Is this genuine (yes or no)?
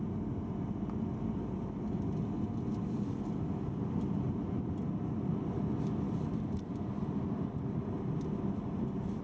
yes